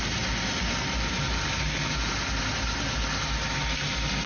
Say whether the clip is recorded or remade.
recorded